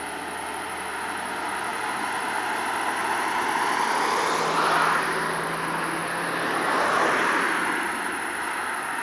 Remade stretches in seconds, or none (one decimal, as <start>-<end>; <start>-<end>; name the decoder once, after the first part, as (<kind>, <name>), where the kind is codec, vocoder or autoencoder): none